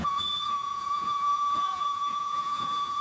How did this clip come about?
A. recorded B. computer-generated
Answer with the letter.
B